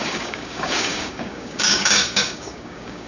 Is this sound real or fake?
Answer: fake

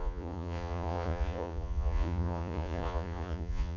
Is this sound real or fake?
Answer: fake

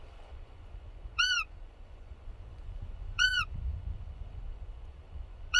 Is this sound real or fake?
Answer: fake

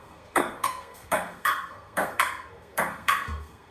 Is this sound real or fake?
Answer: fake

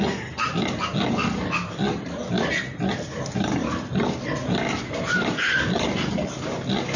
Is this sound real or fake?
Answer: real